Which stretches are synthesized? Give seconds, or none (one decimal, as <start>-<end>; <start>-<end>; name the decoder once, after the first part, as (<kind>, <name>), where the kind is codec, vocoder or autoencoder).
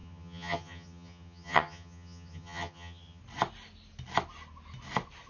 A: 0.0-3.2 (vocoder, HiFi-GAN)